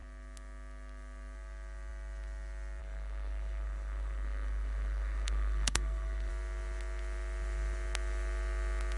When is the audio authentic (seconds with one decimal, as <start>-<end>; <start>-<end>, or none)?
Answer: 0.0-2.8; 6.3-9.0

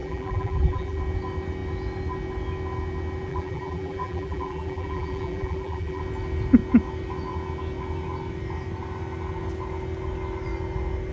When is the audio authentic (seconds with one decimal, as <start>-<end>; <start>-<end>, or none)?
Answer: 1.0-3.3; 6.0-11.1